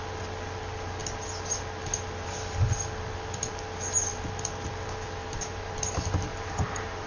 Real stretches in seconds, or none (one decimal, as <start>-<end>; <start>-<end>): 0.0-5.2; 5.8-6.3